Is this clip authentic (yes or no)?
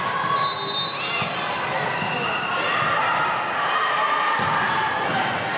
yes